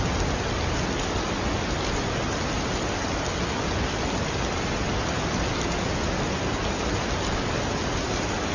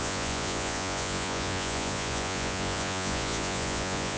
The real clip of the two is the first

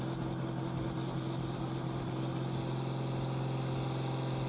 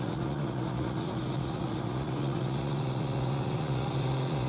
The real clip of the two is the first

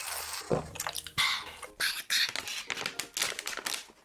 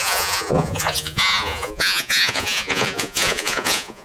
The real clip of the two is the first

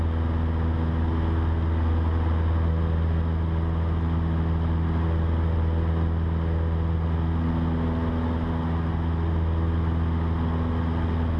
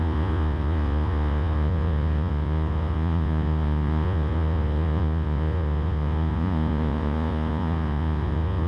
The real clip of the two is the first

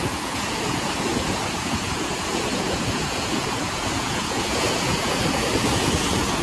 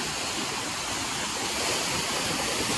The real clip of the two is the second